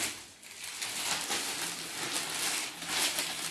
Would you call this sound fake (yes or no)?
no